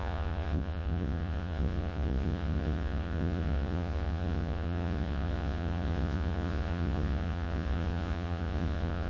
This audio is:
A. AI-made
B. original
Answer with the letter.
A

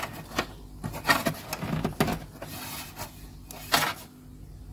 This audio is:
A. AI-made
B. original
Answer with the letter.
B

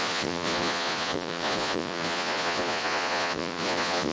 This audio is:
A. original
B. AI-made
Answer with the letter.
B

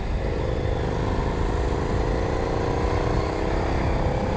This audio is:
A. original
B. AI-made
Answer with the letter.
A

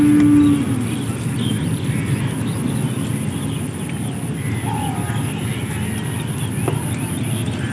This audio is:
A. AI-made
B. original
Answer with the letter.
B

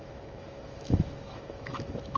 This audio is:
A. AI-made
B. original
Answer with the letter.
A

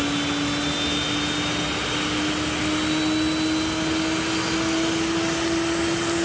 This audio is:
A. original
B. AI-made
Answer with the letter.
A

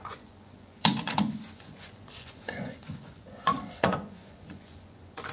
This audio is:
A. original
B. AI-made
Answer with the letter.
B